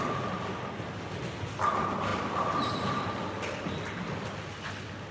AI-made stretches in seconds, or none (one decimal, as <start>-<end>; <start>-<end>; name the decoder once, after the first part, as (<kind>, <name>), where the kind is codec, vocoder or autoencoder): none